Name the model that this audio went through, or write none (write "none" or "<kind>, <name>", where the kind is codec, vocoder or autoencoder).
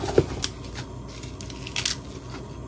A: none